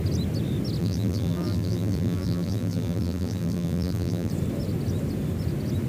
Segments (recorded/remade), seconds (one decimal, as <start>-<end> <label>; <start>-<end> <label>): 0.0-0.8 recorded; 0.8-4.3 remade; 4.3-5.9 recorded